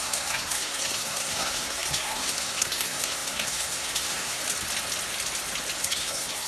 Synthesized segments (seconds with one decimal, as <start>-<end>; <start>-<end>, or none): 0.0-4.4; 5.8-6.5